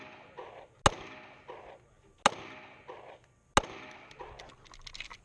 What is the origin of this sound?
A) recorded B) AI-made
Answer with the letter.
A